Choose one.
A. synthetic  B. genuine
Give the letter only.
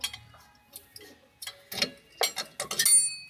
B